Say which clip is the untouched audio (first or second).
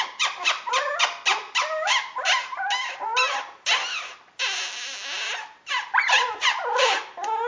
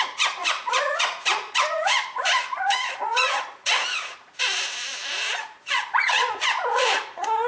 first